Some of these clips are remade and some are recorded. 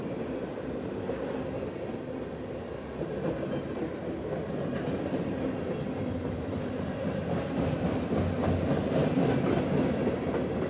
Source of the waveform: recorded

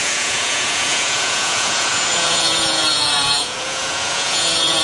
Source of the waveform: remade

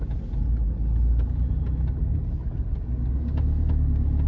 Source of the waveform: recorded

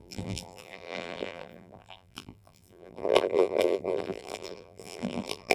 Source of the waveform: remade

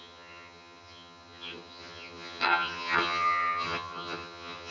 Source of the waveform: remade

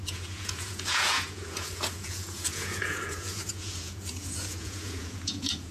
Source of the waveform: remade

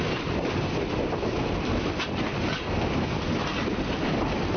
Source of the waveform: recorded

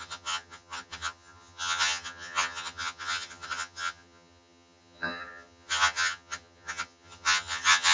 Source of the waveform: remade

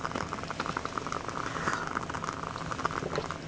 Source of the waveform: recorded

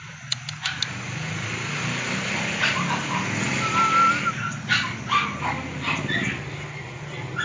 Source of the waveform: recorded